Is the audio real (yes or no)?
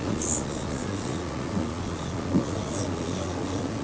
no